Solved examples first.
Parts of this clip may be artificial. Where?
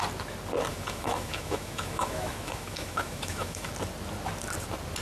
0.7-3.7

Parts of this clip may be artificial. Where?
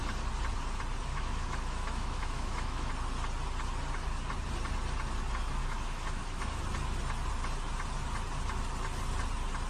1.1-2.9; 5.6-6.6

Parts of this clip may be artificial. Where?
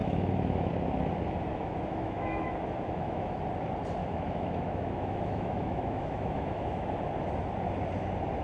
0.0-0.7; 1.5-3.4; 4.0-6.9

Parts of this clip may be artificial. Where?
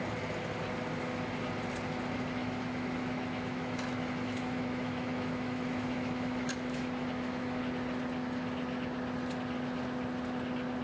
2.4-7.6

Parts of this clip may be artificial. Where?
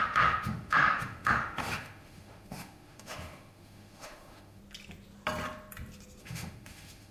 0.0-4.6; 6.2-7.1